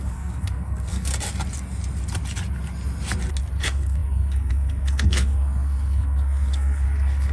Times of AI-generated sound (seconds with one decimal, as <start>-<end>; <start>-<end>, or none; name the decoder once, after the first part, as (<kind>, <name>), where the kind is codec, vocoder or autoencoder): 0.0-1.1 (codec, SNAC); 3.6-7.3